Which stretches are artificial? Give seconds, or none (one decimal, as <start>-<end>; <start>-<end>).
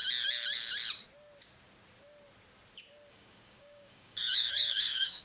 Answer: 3.1-5.2